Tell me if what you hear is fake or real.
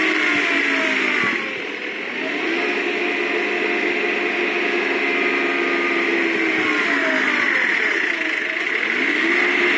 real